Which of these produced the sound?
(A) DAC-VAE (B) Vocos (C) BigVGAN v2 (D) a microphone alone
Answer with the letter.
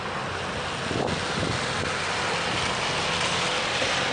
D